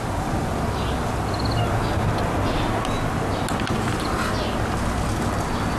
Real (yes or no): yes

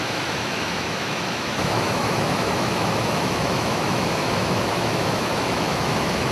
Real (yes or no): no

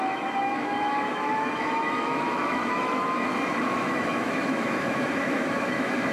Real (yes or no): no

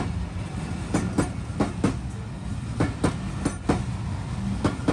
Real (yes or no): yes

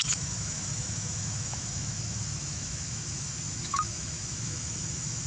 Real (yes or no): no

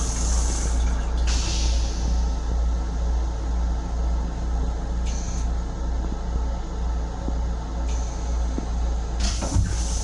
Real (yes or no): yes